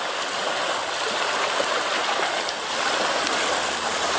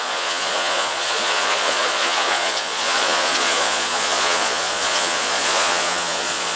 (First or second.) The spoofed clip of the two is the second